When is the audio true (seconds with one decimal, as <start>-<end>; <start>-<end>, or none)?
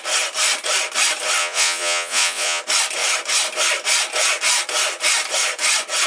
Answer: 0.0-1.4; 2.6-6.1